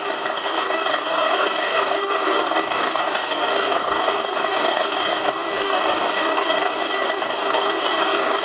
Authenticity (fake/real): fake